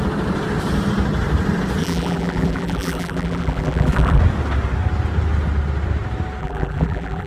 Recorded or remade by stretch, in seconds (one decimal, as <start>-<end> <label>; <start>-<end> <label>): 0.0-1.8 recorded; 1.8-4.2 remade; 4.2-6.4 recorded; 6.4-7.3 remade